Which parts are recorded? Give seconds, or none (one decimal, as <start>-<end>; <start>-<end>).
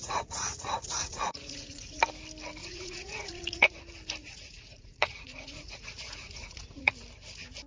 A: 2.0-2.6; 3.8-4.2; 6.9-7.7